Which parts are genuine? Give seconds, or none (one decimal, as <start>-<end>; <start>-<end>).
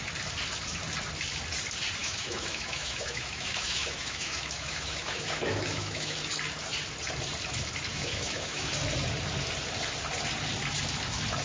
0.0-2.0; 6.2-7.9; 8.7-11.4